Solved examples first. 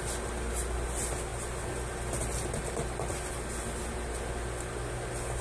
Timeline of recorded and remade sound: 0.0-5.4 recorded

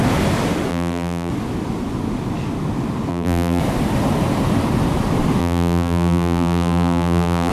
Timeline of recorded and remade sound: 0.0-0.7 recorded; 0.7-1.3 remade; 1.3-3.1 recorded; 3.1-3.6 remade; 3.6-5.4 recorded; 5.4-7.5 remade

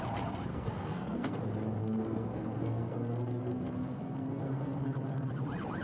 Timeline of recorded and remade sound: 0.0-0.5 recorded; 0.5-1.4 remade; 1.4-1.8 recorded; 1.8-5.3 remade; 5.3-5.8 recorded

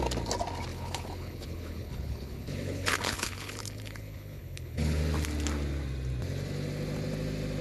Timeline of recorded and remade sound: 0.0-0.7 recorded; 0.7-5.0 remade; 5.0-7.6 recorded

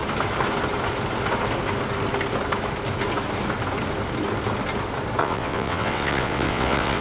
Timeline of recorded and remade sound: 0.0-5.2 recorded; 5.2-7.0 remade

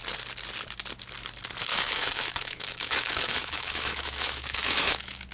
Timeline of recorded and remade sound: 0.0-1.7 recorded; 1.7-5.3 remade